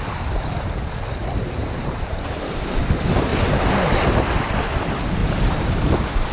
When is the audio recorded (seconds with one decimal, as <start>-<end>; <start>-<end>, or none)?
0.0-1.2; 2.8-5.2; 5.8-6.3